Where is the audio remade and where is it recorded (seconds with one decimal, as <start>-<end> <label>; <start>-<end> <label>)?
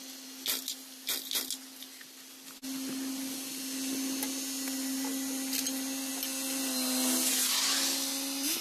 0.0-8.6 recorded